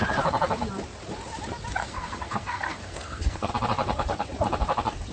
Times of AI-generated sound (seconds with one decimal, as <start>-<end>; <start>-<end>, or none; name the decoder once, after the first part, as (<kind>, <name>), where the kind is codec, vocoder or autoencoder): 1.8-3.5 (codec, SNAC)